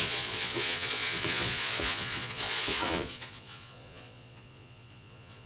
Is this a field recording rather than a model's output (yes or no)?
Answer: no